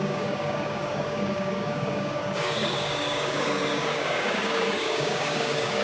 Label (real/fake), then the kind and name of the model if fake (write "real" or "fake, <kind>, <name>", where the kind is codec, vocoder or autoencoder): fake, codec, DAC